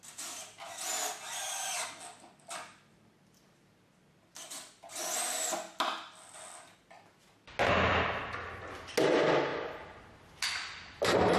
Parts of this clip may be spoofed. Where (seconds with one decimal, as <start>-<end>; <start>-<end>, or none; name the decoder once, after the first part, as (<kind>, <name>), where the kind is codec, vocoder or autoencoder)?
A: none